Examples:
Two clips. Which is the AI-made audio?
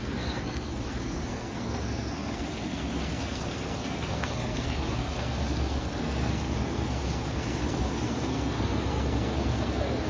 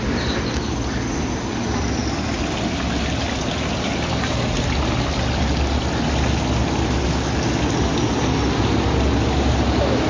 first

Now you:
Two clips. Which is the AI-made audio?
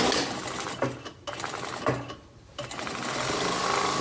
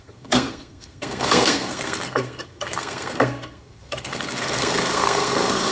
second